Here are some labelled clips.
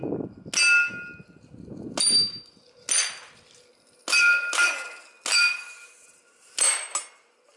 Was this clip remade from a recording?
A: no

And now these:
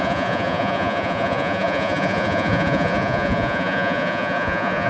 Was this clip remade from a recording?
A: yes